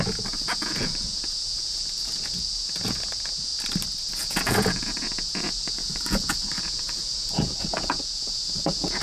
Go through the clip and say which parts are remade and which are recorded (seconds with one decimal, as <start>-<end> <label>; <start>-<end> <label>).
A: 0.0-3.5 remade; 3.5-4.1 recorded; 4.1-9.0 remade